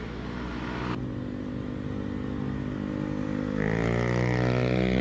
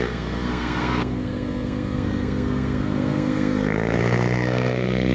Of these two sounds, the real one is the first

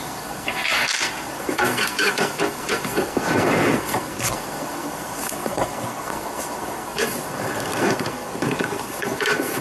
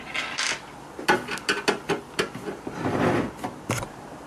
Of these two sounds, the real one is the second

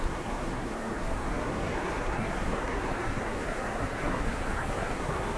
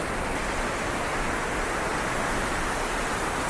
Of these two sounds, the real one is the second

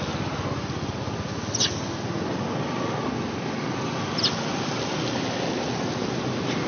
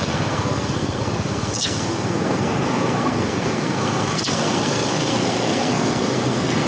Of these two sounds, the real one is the first